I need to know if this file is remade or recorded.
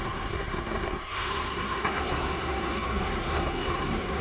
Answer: remade